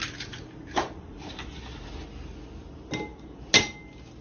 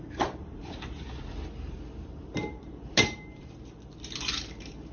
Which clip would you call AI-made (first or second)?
second